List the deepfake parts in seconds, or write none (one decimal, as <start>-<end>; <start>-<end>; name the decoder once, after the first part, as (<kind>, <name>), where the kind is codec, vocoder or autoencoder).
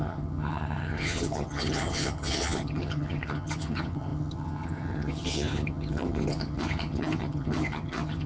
0.0-8.3 (vocoder, HiFi-GAN)